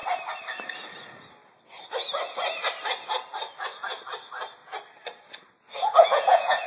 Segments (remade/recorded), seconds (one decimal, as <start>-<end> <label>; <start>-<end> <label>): 0.0-6.0 recorded; 6.0-6.7 remade

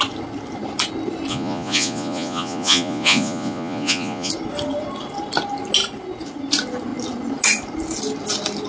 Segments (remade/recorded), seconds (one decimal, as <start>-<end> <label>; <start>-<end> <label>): 0.0-1.3 recorded; 1.3-4.3 remade; 4.3-8.7 recorded

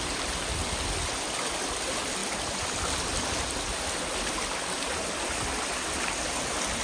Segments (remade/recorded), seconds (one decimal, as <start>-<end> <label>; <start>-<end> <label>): 0.0-6.8 recorded

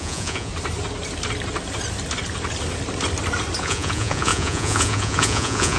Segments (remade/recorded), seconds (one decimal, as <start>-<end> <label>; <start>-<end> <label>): 0.0-0.5 remade; 0.5-3.6 recorded; 3.6-5.8 remade

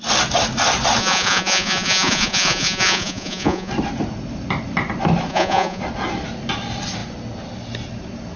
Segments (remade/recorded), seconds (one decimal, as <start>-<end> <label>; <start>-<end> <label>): 0.0-1.0 recorded; 1.0-3.7 remade; 3.7-5.3 recorded; 5.3-5.8 remade; 5.8-8.4 recorded